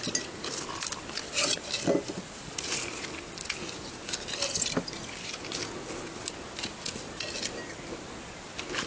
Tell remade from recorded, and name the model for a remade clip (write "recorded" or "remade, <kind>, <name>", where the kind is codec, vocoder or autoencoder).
recorded